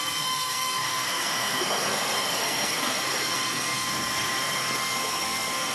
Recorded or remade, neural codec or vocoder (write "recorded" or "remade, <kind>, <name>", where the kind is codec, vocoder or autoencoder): remade, codec, SNAC